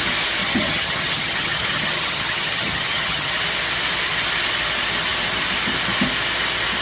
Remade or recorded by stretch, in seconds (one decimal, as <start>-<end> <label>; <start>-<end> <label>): 0.0-0.4 recorded; 0.4-3.3 remade; 3.3-6.8 recorded